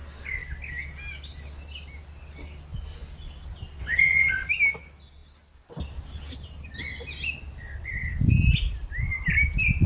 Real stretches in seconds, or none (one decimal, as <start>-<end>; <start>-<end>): 0.0-3.8; 4.5-9.9